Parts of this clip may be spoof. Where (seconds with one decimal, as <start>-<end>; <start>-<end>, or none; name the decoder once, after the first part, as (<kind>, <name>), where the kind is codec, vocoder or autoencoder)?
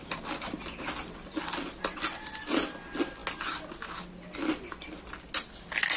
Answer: none